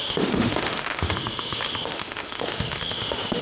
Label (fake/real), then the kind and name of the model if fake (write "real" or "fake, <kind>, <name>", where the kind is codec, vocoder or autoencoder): fake, autoencoder, DAC-VAE